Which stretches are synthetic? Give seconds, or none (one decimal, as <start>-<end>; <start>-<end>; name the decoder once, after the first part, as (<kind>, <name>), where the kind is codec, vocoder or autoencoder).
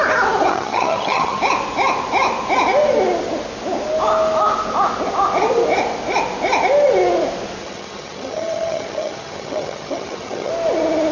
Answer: 0.5-1.4 (vocoder, HiFi-GAN); 7.6-10.5